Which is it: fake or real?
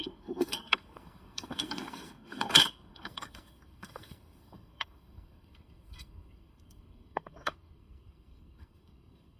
fake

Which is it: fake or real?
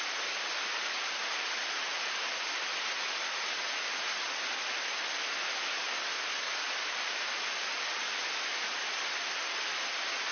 real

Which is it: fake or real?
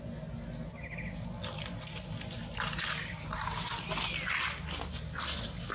real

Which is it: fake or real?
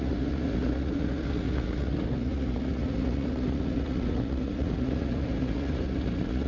fake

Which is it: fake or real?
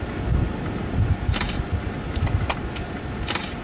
real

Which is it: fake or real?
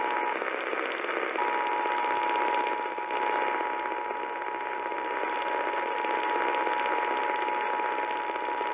real